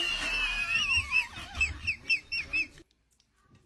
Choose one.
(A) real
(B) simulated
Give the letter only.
A